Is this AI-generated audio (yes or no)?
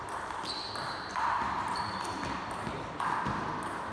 no